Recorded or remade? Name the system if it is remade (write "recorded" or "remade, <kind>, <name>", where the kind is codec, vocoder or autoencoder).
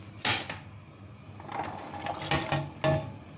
recorded